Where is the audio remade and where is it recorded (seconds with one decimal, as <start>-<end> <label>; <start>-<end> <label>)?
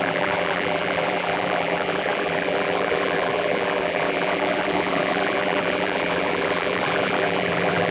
0.0-7.9 remade